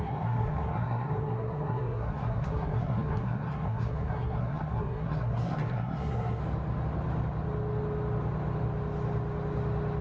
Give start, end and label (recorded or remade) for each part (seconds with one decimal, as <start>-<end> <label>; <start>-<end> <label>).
0.0-6.4 remade; 6.4-10.0 recorded